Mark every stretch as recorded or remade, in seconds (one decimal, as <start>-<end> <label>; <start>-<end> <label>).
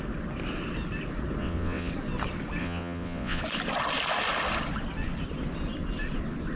0.0-1.4 recorded; 1.4-1.9 remade; 1.9-2.6 recorded; 2.6-3.4 remade; 3.4-6.6 recorded